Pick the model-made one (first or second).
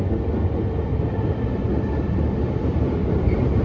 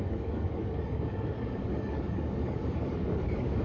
second